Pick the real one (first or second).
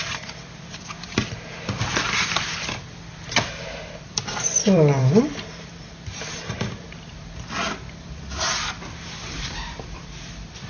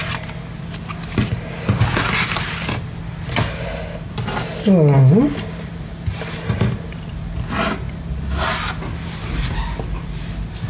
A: second